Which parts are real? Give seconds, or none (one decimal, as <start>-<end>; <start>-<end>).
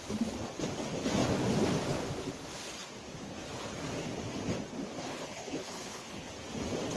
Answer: 0.0-5.0; 6.3-7.0